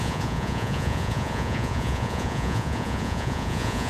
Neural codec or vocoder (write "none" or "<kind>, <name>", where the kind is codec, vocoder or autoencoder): vocoder, Vocos